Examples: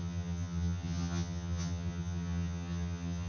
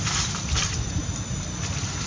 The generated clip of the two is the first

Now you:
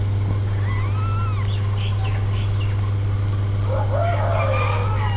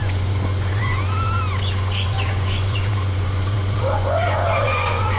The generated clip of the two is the second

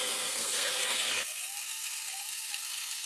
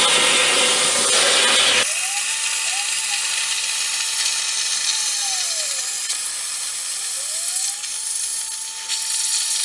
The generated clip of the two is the first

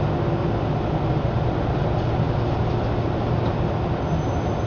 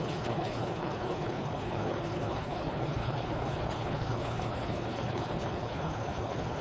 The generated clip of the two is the second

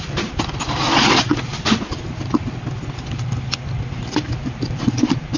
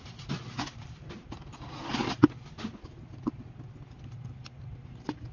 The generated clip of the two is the first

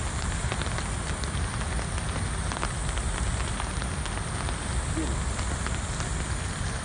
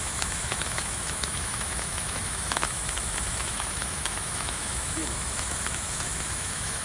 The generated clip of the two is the second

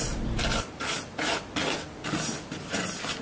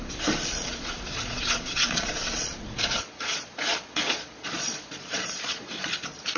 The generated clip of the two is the second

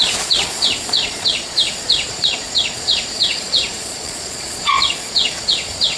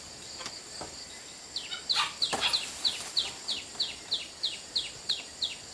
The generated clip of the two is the first